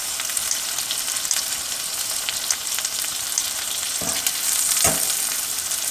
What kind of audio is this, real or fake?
fake